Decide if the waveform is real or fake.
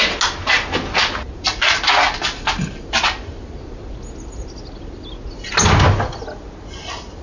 real